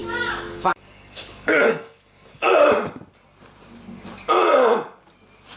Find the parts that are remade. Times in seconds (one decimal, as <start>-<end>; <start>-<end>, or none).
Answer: 0.0-2.5